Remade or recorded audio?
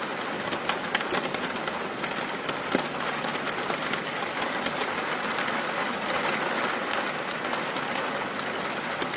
recorded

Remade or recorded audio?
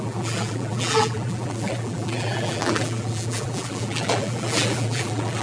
remade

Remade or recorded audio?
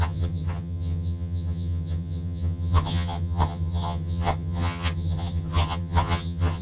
remade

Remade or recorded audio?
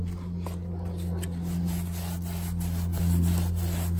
recorded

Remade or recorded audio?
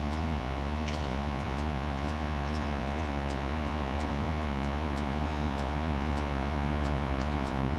remade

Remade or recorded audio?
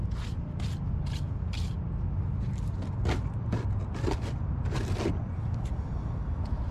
recorded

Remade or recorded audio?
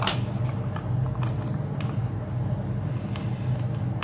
recorded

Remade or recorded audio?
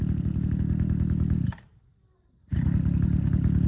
recorded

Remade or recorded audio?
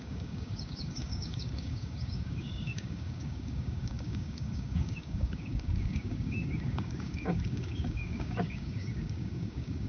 remade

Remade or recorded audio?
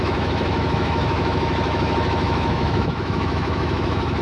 remade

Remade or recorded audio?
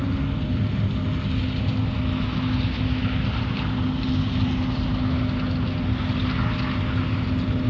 recorded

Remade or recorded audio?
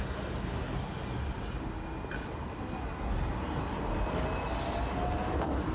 recorded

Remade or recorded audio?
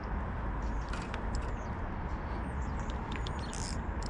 recorded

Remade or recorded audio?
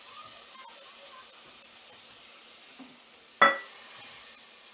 recorded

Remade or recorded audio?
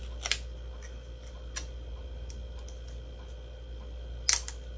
recorded